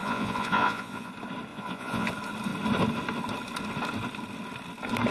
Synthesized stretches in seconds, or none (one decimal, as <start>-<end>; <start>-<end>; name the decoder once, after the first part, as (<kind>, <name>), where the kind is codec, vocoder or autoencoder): 0.0-1.1 (vocoder, Vocos); 1.5-2.1